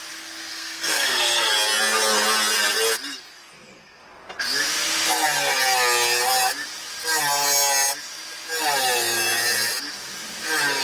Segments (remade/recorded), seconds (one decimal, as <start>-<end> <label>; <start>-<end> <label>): 0.0-0.5 recorded; 0.5-1.5 remade; 1.5-10.8 recorded